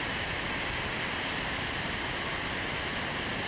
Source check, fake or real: real